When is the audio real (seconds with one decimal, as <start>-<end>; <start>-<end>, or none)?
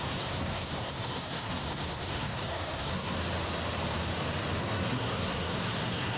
3.2-4.6